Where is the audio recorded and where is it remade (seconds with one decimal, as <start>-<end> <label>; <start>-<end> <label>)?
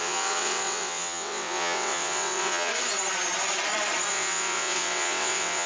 0.0-2.7 remade; 2.7-4.1 recorded; 4.1-5.7 remade